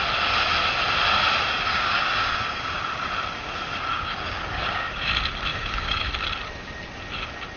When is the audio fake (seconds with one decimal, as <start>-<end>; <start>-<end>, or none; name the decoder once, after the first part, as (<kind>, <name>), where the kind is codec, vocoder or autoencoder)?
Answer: 1.7-2.8 (codec, DAC); 3.9-5.1; 5.5-6.1